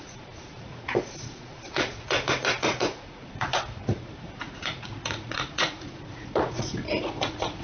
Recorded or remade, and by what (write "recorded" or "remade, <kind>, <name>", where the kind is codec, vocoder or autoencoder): remade, vocoder, Vocos